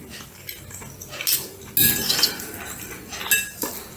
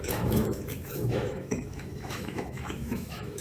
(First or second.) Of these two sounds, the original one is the first